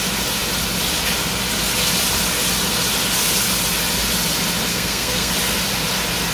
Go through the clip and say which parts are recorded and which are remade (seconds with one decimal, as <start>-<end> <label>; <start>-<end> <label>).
0.0-4.7 recorded; 4.7-5.3 remade; 5.3-6.3 recorded